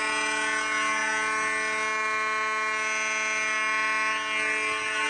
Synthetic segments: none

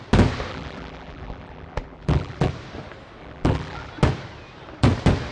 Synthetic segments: 0.5-2.5 (vocoder, BigVGAN v2); 3.2-3.9

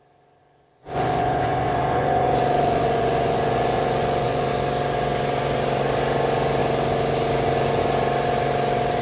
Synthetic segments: 0.4-4.5 (vocoder, Vocos)

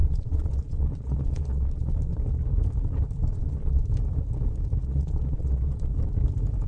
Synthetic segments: 0.0-2.1 (vocoder, Vocos); 3.3-3.8; 4.8-5.9

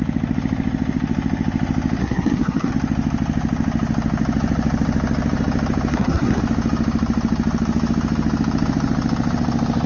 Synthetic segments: 2.0-2.7 (codec, SNAC); 5.9-6.4

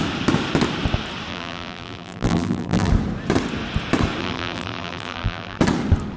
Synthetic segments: 1.3-2.9 (vocoder, BigVGAN v2); 4.2-5.6

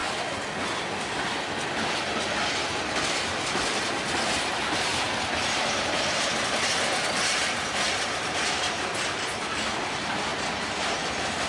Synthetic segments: 4.9-9.0 (vocoder, BigVGAN v2); 10.3-11.0

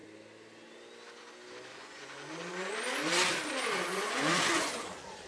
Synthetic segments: 1.7-2.7 (vocoder, Vocos); 3.9-5.3